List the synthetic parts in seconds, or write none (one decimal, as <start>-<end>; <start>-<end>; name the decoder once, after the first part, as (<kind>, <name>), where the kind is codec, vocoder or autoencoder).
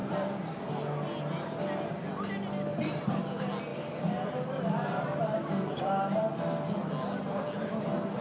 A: 0.0-0.6 (vocoder, BigVGAN v2); 2.7-3.2; 3.7-6.2